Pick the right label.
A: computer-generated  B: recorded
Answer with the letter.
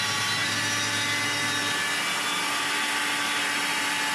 B